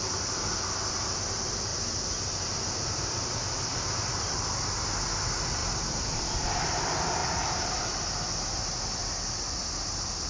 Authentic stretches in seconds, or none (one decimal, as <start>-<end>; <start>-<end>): 0.0-7.2; 8.0-10.3